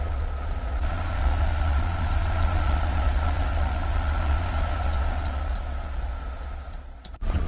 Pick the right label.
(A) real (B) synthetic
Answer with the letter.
B